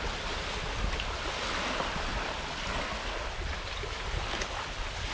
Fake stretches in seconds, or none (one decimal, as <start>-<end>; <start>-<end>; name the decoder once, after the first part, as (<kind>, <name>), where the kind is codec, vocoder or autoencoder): none